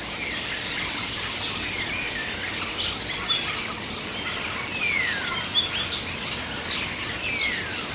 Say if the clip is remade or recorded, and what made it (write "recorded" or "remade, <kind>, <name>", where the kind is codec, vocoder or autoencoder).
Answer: recorded